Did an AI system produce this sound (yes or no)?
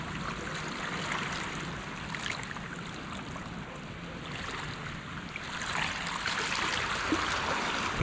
no